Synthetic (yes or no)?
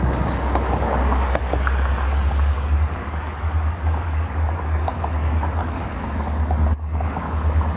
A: yes